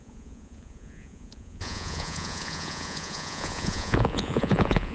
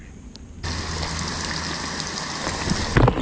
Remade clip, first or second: first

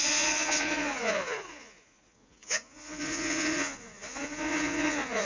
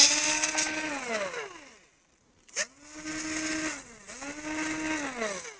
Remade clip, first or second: first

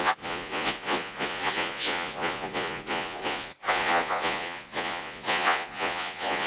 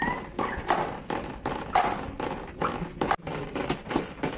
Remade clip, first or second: first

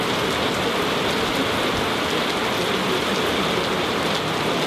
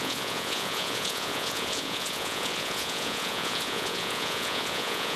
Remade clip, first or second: second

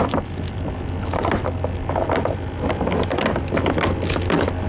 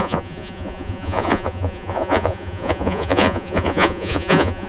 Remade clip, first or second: second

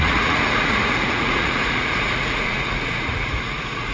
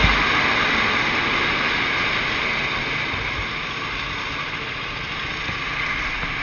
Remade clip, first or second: first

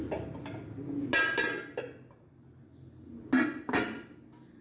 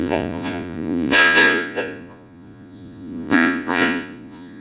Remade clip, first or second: second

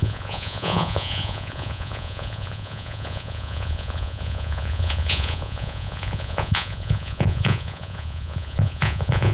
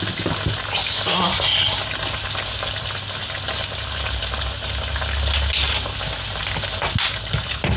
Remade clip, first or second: first